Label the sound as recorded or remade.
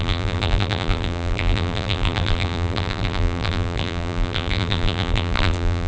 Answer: remade